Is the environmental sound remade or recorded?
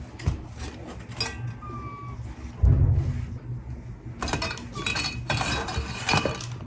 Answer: recorded